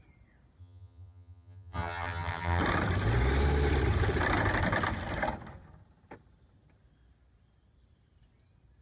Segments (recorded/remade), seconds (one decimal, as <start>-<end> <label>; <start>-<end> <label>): 0.0-0.6 recorded; 0.6-2.6 remade; 2.6-8.8 recorded